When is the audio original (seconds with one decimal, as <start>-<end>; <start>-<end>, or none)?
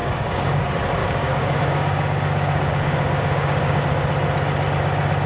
0.6-1.0; 3.8-5.3